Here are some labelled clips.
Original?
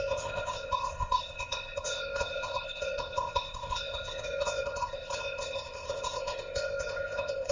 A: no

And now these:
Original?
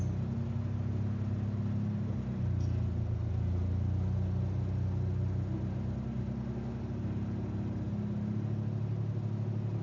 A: yes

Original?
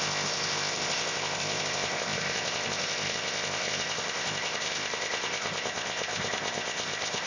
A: no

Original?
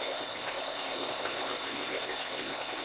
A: no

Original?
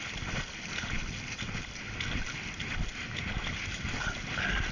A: yes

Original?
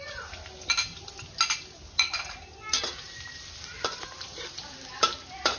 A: yes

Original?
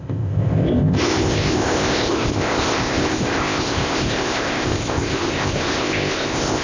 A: no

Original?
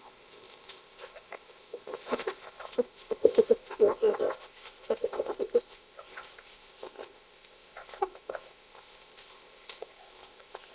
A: no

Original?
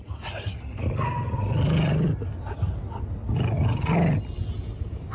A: yes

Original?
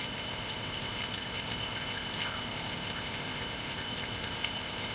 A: no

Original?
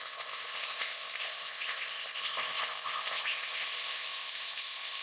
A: no